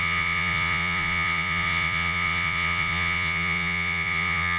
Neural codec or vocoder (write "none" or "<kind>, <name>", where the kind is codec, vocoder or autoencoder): vocoder, Vocos